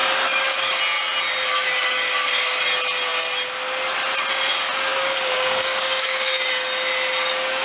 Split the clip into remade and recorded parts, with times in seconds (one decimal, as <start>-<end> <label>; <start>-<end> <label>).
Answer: 0.0-0.8 remade; 0.8-1.5 recorded; 1.5-2.6 remade; 2.6-4.9 recorded; 4.9-6.5 remade; 6.5-7.6 recorded